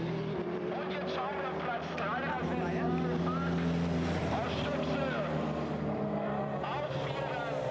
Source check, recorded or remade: recorded